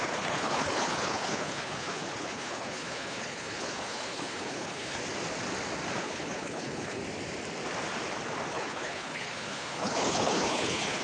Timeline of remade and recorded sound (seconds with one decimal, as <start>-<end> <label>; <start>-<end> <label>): 0.0-5.0 remade; 5.0-6.0 recorded; 6.0-7.0 remade; 7.0-8.5 recorded; 8.5-11.0 remade